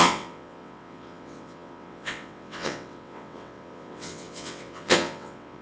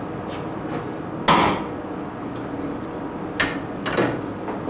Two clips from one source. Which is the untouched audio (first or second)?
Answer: second